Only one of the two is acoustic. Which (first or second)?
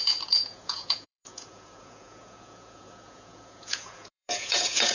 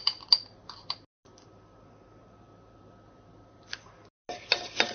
second